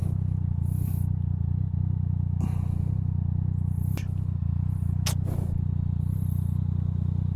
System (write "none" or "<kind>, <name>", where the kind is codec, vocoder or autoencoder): none